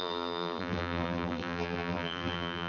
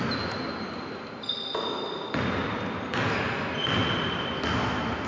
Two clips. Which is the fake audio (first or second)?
first